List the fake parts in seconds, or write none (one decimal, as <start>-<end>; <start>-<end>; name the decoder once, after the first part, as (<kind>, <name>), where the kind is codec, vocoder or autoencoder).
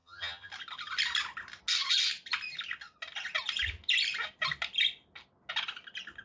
0.0-0.5 (vocoder, HiFi-GAN)